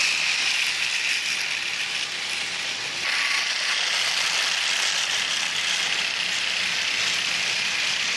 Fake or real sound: real